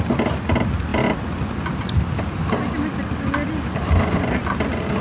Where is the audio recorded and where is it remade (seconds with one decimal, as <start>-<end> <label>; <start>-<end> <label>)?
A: 0.0-5.0 recorded